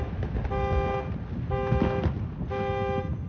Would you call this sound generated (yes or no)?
no